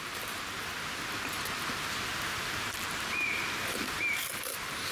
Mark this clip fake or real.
fake